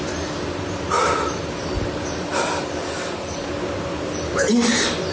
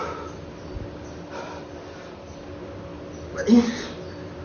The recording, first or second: second